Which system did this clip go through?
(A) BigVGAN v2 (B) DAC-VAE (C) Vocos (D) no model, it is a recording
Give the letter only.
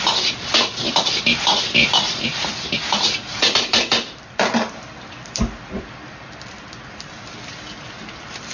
A